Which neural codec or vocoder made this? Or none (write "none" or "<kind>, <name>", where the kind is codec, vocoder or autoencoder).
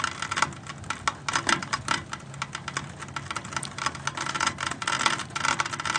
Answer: none